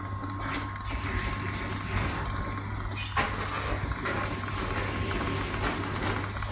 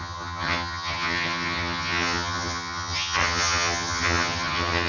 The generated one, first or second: second